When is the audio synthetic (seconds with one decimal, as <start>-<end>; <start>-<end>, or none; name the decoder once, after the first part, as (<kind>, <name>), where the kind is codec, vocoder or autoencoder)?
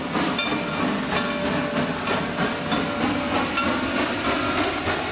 none